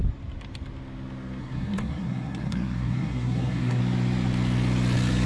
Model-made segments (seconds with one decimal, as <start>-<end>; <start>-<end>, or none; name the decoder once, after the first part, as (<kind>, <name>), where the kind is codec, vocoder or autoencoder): 1.4-3.8 (codec, SNAC)